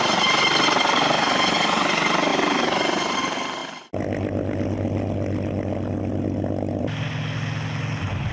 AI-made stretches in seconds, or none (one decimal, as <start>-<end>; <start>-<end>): none